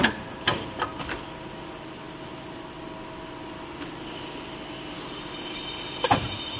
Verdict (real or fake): real